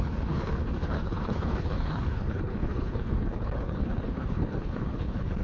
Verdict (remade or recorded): remade